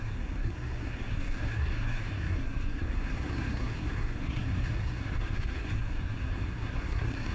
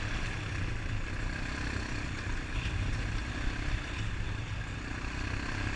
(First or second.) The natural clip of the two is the second